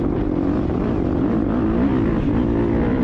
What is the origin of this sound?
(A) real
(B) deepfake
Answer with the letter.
A